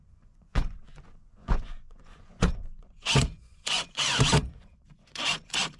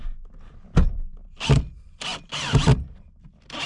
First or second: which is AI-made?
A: first